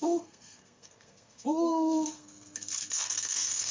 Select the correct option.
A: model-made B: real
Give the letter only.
A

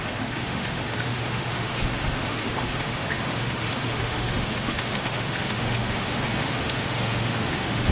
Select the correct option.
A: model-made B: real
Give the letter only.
A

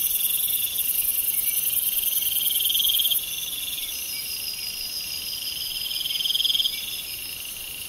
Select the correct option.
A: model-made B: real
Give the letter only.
B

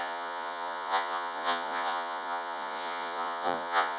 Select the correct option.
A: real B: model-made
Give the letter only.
B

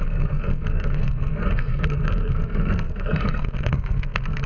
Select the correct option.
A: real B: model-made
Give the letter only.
B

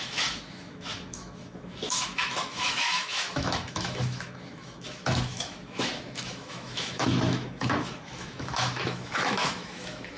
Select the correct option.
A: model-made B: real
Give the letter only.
A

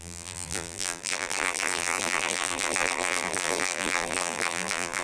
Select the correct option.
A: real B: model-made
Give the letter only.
B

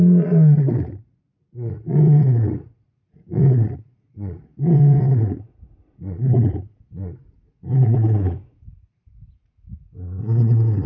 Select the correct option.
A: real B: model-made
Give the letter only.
B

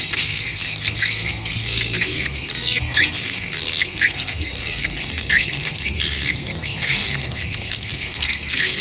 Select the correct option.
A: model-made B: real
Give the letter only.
A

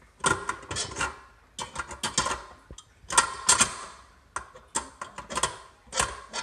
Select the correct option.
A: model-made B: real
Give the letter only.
B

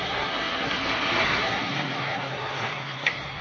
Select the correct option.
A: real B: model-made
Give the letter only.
B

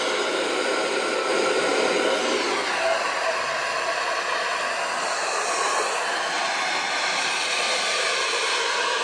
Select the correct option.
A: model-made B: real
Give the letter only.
B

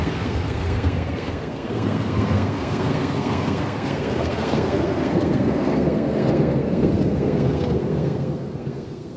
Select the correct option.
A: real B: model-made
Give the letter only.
B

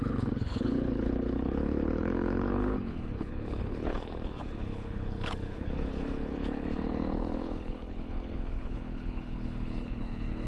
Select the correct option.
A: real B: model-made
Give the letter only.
B